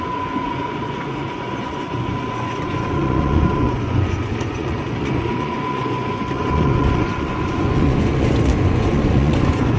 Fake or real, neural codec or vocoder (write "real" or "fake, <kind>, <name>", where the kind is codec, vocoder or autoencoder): fake, vocoder, Vocos